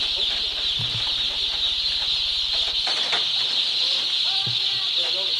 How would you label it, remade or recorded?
recorded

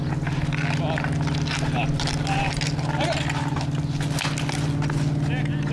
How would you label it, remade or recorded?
recorded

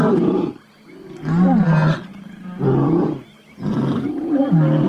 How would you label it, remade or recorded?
recorded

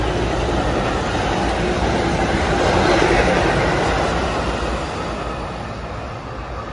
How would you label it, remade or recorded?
recorded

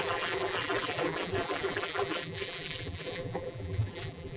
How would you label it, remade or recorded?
remade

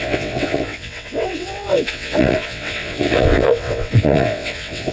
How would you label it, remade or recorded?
remade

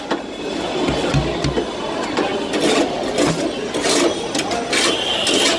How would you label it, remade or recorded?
recorded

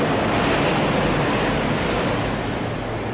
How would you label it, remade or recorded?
recorded